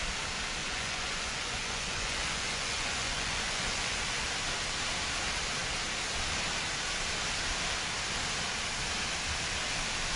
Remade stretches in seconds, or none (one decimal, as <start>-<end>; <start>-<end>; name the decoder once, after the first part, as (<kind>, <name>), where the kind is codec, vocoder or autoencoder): 0.6-4.0 (vocoder, Vocos)